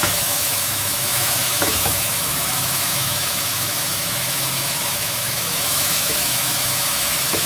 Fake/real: fake